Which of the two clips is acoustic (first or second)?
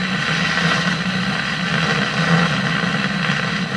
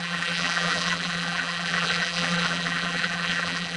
first